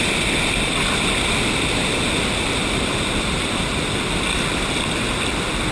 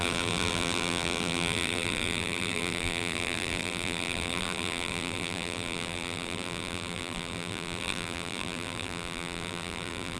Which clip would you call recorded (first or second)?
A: first